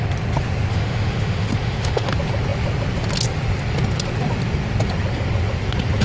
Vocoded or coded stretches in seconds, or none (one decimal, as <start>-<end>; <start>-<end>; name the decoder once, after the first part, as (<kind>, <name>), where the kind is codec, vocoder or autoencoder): 0.7-2.1 (autoencoder, DAC-VAE)